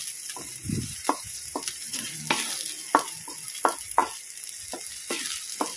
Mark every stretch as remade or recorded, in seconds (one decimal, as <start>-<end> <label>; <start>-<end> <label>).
0.0-0.6 recorded; 0.6-2.1 remade; 2.1-5.8 recorded